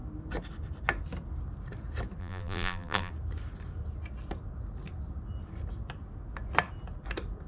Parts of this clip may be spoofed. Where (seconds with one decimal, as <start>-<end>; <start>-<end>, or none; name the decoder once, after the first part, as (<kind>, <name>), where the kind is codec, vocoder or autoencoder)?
2.2-3.1 (vocoder, BigVGAN v2)